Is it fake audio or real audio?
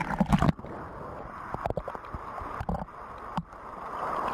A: real